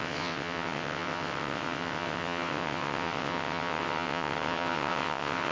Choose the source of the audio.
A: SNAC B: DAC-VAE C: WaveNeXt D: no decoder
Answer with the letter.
C